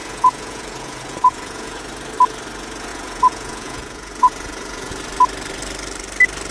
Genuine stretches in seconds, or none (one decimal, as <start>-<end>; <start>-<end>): 1.8-2.9; 4.9-6.5